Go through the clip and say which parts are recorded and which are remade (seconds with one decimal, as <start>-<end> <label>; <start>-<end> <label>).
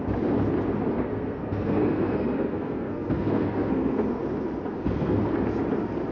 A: 0.0-0.9 recorded; 0.9-4.2 remade; 4.2-4.7 recorded; 4.7-5.2 remade; 5.2-6.1 recorded